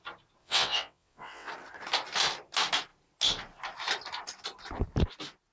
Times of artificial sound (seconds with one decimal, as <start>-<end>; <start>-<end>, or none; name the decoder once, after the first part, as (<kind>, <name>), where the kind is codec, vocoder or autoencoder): 0.4-1.5 (vocoder, WaveNeXt)